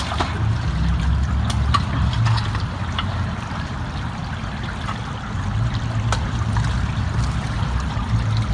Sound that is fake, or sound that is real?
real